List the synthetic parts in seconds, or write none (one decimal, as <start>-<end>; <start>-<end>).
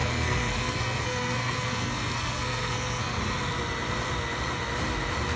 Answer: 0.0-3.2